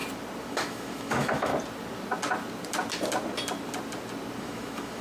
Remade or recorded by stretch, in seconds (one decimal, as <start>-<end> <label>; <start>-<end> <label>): 0.0-0.5 recorded; 0.5-1.5 remade; 1.5-4.4 recorded; 4.4-5.0 remade